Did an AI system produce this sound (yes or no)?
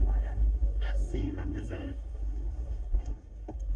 yes